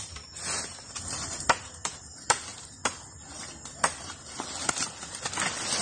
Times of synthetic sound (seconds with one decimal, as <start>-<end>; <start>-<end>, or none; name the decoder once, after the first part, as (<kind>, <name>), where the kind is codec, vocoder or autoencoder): none